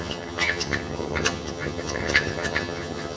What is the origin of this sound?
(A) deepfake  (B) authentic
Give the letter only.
A